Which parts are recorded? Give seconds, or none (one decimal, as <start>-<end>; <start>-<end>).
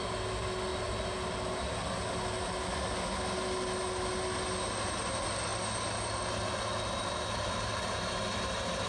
0.0-8.9